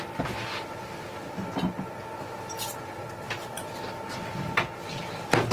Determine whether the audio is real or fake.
real